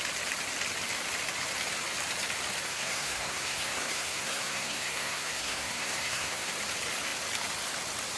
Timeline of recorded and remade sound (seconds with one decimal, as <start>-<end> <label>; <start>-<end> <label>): 0.0-2.7 recorded; 2.7-6.5 remade; 6.5-8.2 recorded